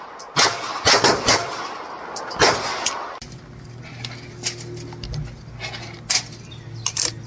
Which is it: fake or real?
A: real